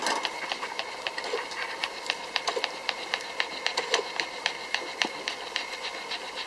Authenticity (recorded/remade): recorded